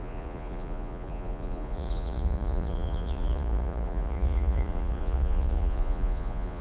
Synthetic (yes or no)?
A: yes